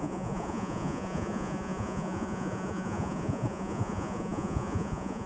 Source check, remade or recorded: remade